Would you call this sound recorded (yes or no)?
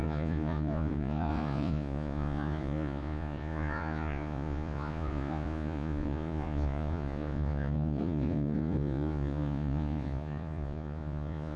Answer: no